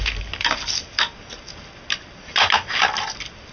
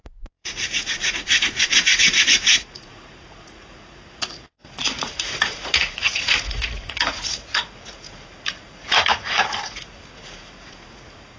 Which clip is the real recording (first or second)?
first